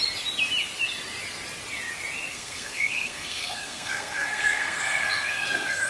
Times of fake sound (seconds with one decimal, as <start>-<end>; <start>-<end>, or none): 2.3-5.9